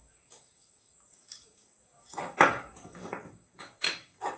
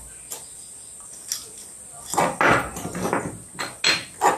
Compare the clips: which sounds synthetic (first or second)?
first